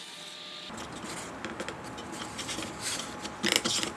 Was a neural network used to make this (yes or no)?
no